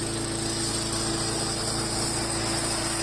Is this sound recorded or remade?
recorded